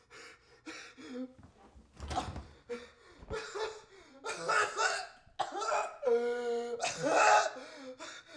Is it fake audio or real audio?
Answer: real